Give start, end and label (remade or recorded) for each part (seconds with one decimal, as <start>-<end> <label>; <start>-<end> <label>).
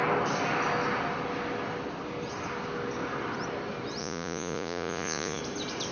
0.0-4.0 recorded; 4.0-5.4 remade; 5.4-5.9 recorded